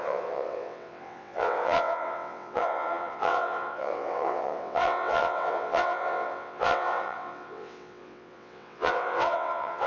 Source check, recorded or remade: remade